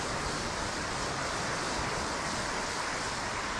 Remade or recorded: recorded